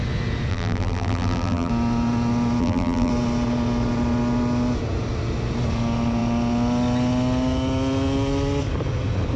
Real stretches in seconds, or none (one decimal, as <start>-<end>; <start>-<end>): 0.0-0.5; 1.7-2.6; 3.1-9.4